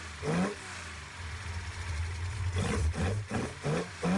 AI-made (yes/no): no